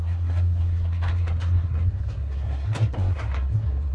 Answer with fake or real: fake